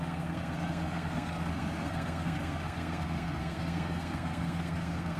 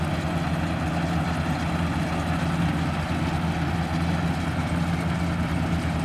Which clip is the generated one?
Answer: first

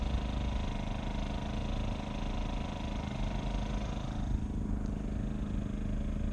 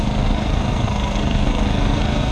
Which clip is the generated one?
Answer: second